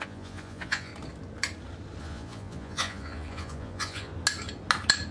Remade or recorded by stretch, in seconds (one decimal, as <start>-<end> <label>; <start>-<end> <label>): 0.0-0.9 remade; 0.9-2.0 recorded; 2.0-4.1 remade; 4.1-5.1 recorded